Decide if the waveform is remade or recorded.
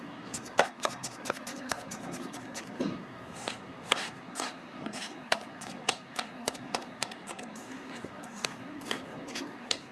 remade